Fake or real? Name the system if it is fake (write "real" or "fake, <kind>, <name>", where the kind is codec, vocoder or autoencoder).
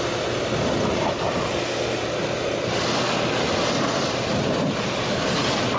real